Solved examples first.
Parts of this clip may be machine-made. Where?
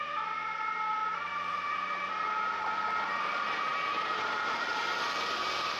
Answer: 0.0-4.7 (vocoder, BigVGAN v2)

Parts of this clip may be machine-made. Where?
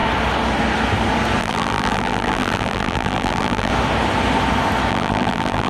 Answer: 1.4-3.7 (vocoder, BigVGAN v2); 4.9-5.7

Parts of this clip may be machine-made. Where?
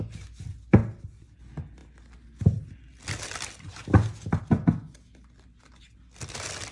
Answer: none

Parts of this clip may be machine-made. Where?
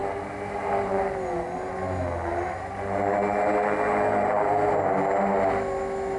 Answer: none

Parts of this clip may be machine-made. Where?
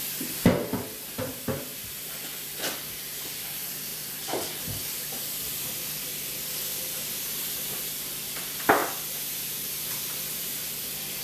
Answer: 1.7-3.2 (vocoder, BigVGAN v2); 3.9-7.8